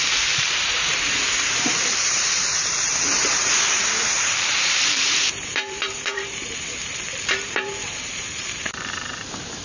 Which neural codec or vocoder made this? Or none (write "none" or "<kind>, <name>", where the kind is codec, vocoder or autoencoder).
vocoder, BigVGAN v2